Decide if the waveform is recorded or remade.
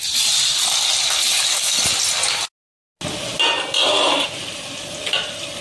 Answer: recorded